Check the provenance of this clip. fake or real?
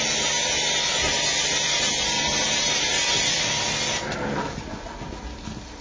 real